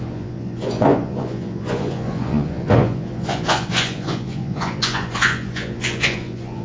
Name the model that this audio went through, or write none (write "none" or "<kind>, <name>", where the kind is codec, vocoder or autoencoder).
vocoder, Vocos